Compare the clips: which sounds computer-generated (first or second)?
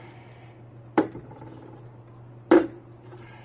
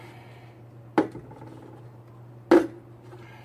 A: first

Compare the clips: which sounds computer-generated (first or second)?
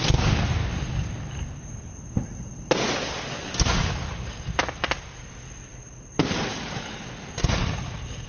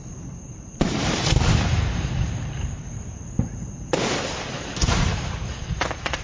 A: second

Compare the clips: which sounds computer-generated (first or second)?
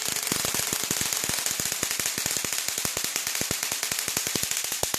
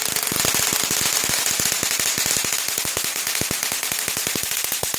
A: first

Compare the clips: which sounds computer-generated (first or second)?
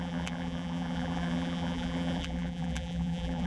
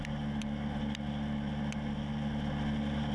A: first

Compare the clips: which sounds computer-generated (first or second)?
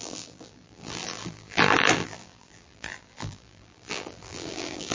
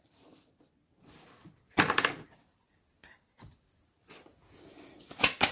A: first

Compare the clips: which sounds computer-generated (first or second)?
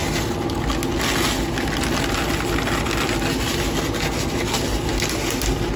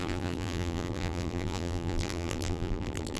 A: second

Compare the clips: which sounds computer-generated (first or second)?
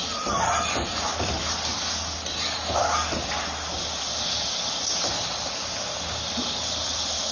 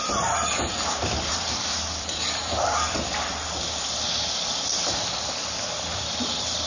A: second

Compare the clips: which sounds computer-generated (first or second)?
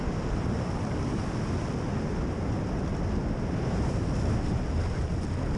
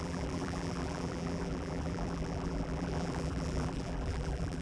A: second